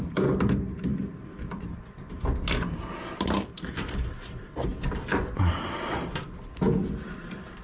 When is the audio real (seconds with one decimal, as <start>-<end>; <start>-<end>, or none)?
0.0-7.6